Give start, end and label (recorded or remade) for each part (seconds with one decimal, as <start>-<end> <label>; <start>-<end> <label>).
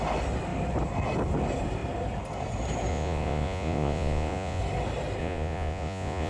0.0-2.9 recorded; 2.9-4.6 remade; 4.6-5.2 recorded; 5.2-6.3 remade